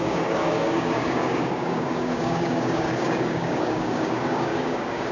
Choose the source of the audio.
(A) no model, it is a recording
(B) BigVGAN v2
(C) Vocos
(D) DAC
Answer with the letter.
D